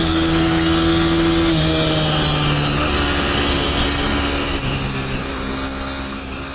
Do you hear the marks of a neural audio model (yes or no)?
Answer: no